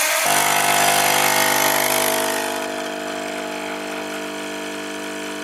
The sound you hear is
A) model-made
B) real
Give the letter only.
B